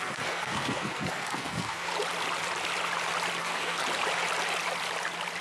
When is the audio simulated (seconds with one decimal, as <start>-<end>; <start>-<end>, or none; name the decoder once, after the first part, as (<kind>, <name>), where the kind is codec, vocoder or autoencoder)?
0.0-1.9 (codec, SNAC); 3.4-3.8